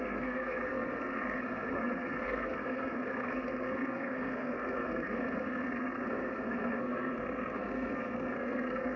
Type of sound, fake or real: fake